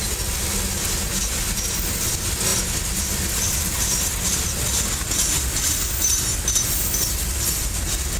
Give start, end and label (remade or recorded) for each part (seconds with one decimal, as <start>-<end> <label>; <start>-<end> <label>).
0.0-8.2 recorded